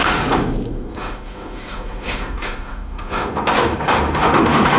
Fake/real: fake